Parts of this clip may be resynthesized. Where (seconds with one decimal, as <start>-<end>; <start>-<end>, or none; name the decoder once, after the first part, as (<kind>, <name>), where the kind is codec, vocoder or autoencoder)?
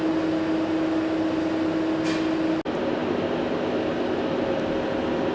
none